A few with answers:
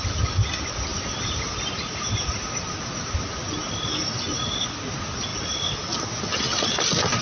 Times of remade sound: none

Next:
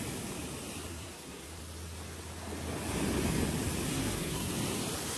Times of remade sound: 0.9-1.6 (codec, SNAC); 3.9-4.5

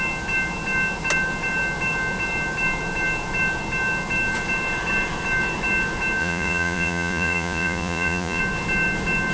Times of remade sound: 6.2-8.4 (vocoder, Vocos)

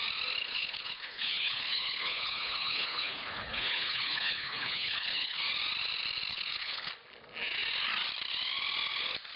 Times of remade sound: 0.4-5.4 (codec, HILCodec); 6.3-6.9